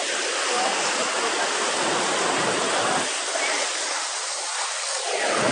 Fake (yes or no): no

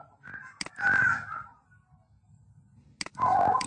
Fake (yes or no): no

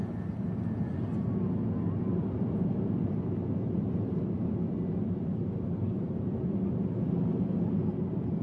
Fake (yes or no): no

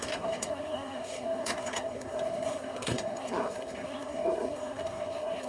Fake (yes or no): yes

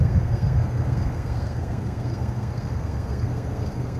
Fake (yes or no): yes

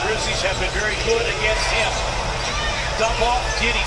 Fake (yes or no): no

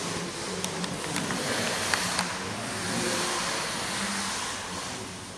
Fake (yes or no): no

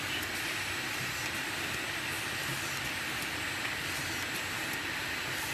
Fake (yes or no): no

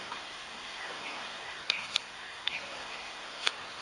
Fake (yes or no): yes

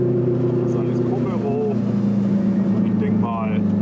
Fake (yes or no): no